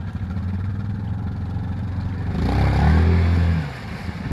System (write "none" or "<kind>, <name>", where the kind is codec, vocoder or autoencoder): none